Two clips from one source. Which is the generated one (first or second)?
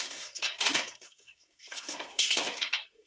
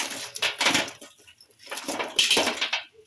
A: first